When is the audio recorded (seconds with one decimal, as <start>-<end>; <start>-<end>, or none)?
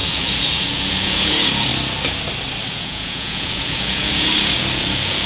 1.7-2.7